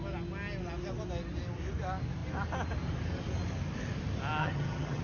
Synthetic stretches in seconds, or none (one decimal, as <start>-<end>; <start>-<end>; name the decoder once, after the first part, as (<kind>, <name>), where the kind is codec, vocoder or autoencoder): 4.4-5.0 (vocoder, HiFi-GAN)